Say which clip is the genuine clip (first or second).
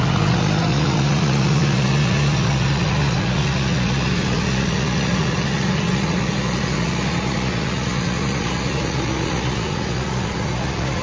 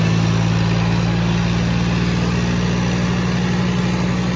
second